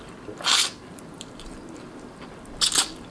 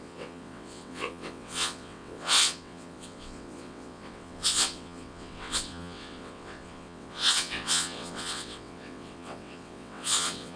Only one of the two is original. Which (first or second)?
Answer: first